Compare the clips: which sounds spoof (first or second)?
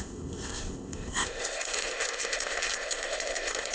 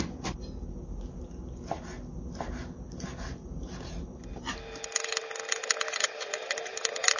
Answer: first